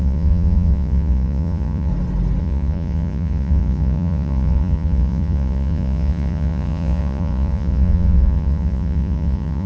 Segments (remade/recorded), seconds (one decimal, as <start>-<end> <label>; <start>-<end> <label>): 0.0-1.9 remade; 1.9-2.4 recorded; 2.4-9.7 remade